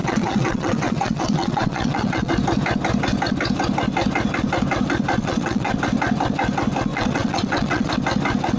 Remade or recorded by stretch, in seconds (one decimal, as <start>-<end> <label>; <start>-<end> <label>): 0.0-2.3 remade; 2.3-5.2 recorded; 5.2-5.7 remade; 5.7-6.9 recorded; 6.9-7.9 remade; 7.9-8.6 recorded